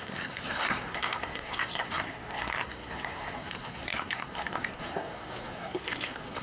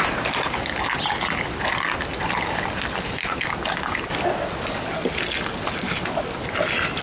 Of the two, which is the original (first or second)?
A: second